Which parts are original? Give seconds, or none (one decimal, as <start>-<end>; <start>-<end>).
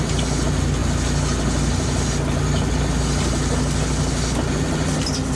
0.0-5.3